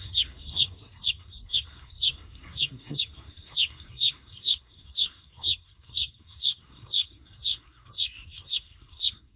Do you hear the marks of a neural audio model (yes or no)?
yes